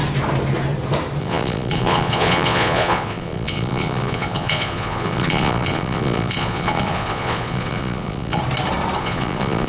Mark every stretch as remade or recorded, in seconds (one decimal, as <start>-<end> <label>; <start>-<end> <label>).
0.0-1.2 recorded; 1.2-8.4 remade; 8.4-9.0 recorded; 9.0-9.7 remade